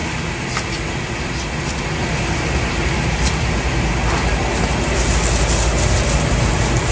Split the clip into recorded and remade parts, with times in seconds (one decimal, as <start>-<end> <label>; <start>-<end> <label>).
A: 0.0-6.9 recorded

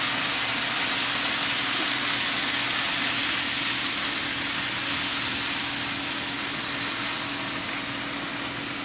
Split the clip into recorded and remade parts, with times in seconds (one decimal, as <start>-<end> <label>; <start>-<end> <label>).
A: 0.0-8.8 recorded

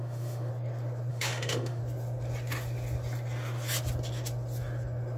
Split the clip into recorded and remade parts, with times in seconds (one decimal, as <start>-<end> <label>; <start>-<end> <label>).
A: 0.0-0.5 remade; 0.5-1.1 recorded; 1.1-1.8 remade; 1.8-5.2 recorded

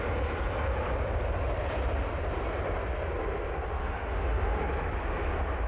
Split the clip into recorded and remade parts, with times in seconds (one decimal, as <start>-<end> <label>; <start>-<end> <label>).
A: 0.0-3.8 recorded; 3.8-4.6 remade; 4.6-5.7 recorded

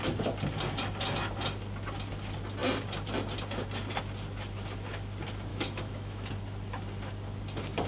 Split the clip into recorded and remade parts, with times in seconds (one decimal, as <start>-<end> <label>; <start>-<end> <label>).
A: 0.0-5.5 recorded; 5.5-6.3 remade; 6.3-7.9 recorded

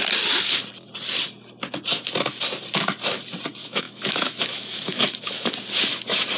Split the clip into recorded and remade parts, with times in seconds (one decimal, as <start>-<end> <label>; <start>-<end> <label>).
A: 0.0-3.6 recorded; 3.6-5.5 remade; 5.5-6.4 recorded